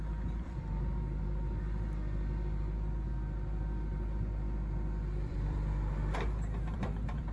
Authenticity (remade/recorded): remade